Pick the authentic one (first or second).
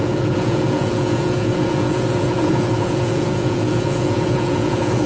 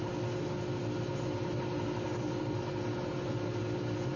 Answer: second